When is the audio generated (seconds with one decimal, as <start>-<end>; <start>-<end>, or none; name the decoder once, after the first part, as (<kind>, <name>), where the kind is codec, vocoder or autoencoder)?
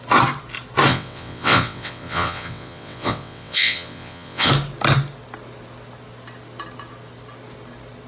0.9-4.5 (vocoder, WaveNeXt)